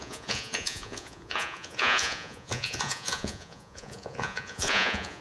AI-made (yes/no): yes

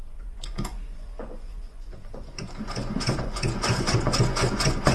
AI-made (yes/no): yes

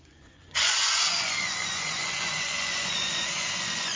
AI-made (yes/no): yes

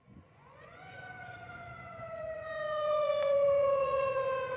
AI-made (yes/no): yes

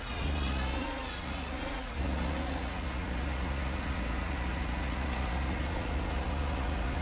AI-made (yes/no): yes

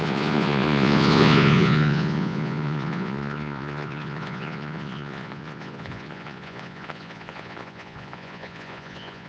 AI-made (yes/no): yes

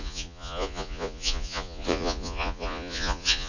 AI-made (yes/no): yes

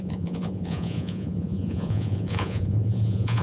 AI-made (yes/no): yes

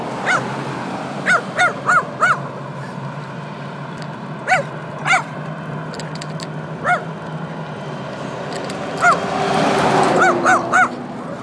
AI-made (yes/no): no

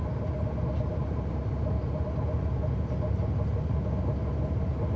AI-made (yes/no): no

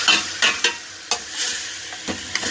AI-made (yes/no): no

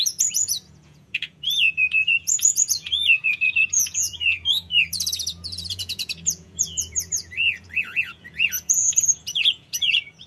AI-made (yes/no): yes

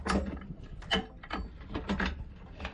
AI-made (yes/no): no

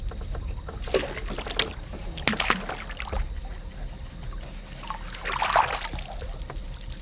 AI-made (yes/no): no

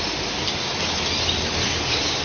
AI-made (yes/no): no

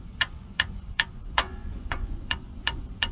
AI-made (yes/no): yes